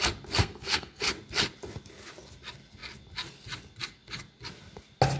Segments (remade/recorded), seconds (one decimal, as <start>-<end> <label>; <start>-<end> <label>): 0.0-0.4 recorded; 0.4-1.1 remade; 1.1-5.2 recorded